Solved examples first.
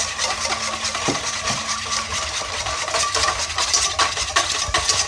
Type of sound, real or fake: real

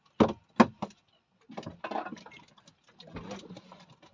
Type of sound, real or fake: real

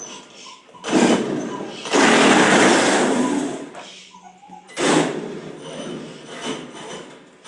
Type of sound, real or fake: real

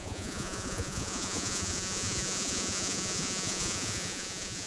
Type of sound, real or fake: fake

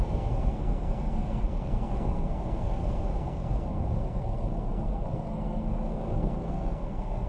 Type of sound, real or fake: fake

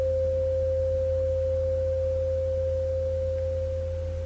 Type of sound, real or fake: real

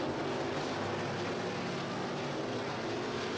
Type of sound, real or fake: real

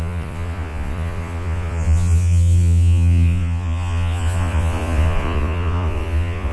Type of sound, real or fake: fake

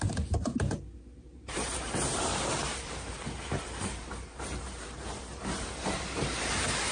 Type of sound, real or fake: fake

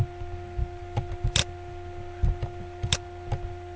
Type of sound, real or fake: real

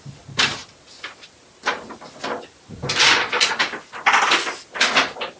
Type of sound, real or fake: real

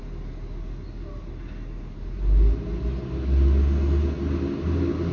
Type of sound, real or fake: real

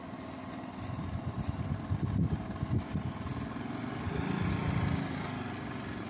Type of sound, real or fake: real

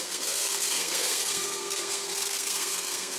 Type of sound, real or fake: fake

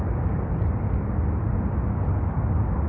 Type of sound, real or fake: real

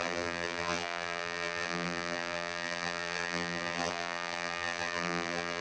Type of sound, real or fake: fake